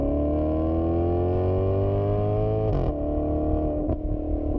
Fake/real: real